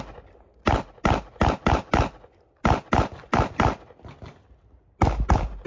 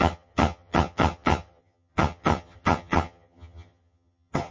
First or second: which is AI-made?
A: second